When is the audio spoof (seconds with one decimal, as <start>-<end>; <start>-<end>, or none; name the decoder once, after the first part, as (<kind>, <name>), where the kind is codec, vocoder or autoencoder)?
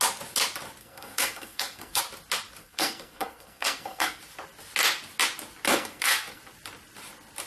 0.8-2.0 (codec, SNAC); 2.6-4.2; 5.7-6.4